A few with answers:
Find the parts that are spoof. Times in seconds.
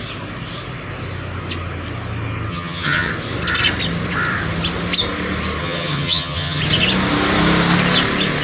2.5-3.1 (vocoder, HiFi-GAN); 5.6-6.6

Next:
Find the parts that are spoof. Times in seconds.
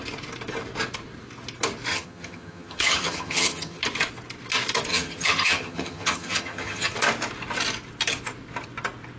1.9-3.8 (vocoder, HiFi-GAN); 4.9-6.9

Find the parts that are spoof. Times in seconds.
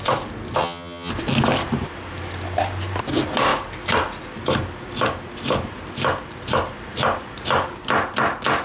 0.6-1.1 (vocoder, HiFi-GAN)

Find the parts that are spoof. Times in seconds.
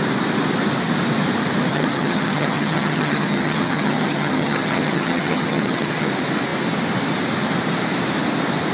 1.7-6.1 (vocoder, HiFi-GAN)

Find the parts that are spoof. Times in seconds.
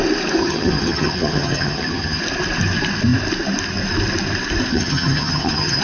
0.4-2.2 (vocoder, HiFi-GAN); 4.7-5.8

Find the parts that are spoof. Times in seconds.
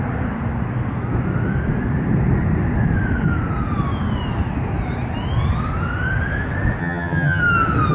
6.8-7.4 (vocoder, HiFi-GAN)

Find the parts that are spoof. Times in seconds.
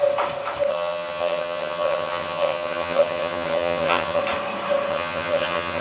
0.7-4.2 (vocoder, HiFi-GAN); 4.9-5.8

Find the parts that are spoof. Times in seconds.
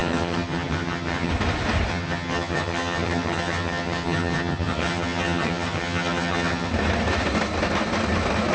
0.0-1.3 (vocoder, HiFi-GAN); 1.9-6.7